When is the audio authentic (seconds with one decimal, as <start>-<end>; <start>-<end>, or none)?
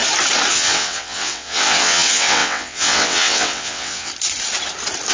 0.0-0.5; 4.1-5.1